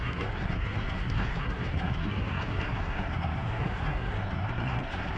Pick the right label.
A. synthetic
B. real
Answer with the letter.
A